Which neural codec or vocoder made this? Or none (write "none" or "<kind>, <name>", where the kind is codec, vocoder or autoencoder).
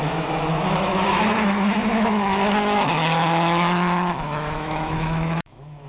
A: autoencoder, DAC-VAE